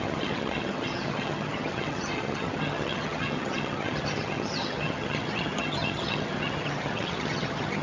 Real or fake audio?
fake